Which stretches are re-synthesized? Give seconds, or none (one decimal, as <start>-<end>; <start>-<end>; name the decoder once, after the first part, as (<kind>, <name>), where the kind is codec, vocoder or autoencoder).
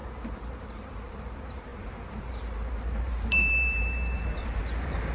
0.0-5.1 (vocoder, BigVGAN v2)